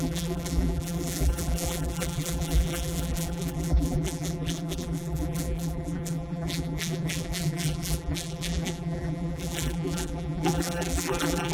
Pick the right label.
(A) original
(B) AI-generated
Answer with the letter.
B